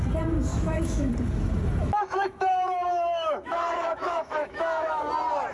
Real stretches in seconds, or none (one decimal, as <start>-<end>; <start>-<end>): 0.0-0.5; 1.1-1.8; 5.1-5.5